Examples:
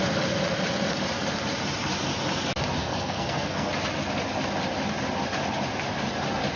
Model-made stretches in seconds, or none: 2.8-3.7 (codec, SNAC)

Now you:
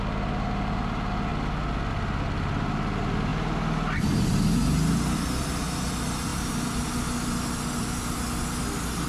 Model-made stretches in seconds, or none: none

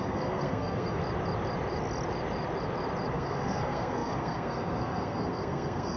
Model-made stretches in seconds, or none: 0.0-1.0 (codec, SNAC); 3.1-6.0

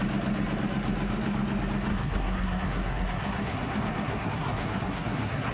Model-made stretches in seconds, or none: 1.9-5.5 (codec, SNAC)

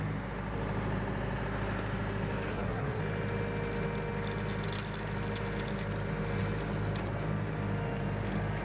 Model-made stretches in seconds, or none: 2.5-3.0 (codec, SNAC)

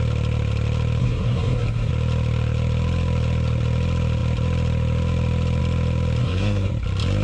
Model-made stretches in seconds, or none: 1.0-1.9 (codec, SNAC); 6.2-6.7

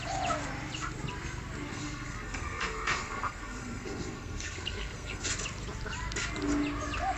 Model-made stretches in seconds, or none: 1.7-5.3 (codec, SNAC)

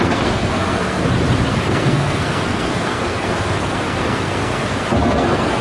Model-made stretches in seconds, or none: 0.0-1.0 (codec, SNAC); 1.5-5.6